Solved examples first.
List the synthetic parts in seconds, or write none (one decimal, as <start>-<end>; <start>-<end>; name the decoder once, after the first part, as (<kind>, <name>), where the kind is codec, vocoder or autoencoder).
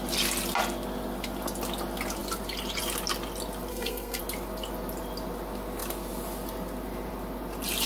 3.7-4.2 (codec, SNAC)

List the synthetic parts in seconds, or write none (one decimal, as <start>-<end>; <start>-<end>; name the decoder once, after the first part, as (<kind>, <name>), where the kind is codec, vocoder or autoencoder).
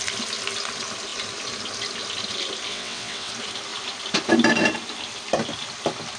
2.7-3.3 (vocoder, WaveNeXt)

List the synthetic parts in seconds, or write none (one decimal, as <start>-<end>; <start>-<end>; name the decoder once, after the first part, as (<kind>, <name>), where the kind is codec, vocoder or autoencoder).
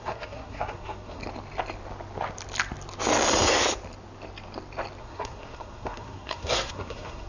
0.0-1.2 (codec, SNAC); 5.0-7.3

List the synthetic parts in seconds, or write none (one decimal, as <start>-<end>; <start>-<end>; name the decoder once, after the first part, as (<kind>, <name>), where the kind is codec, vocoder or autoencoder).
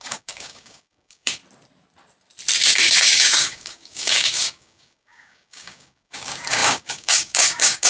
0.0-1.4 (codec, DAC); 2.6-7.9